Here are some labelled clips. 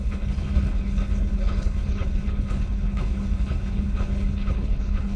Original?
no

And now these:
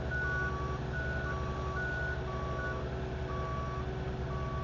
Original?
yes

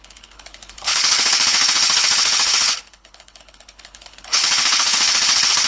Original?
no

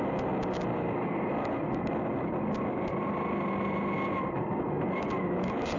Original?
yes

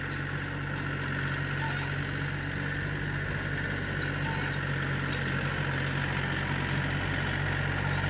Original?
yes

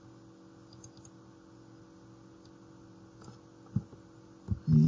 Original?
yes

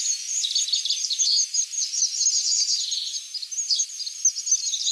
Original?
yes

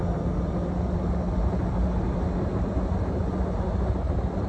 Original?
yes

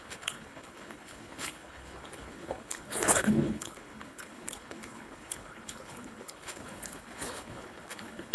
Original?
no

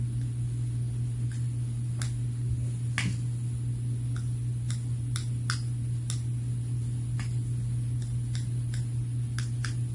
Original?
yes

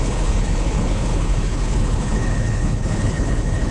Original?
no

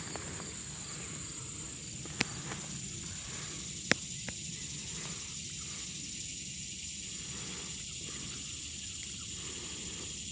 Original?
yes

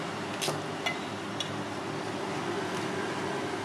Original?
yes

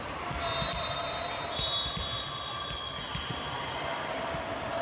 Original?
yes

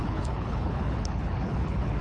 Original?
no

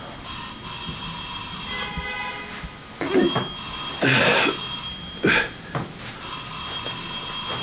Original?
yes